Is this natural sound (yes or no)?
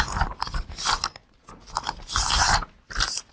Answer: yes